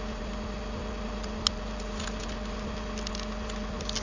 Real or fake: real